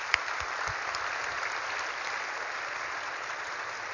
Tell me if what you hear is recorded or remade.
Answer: recorded